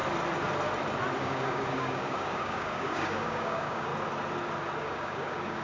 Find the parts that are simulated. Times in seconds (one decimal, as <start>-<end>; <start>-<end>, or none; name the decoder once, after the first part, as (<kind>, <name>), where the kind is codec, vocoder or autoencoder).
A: 1.2-3.9 (codec, DAC); 4.8-5.6